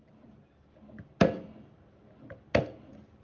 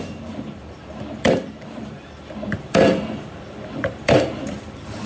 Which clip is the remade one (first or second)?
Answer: second